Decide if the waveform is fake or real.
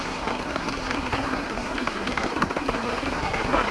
fake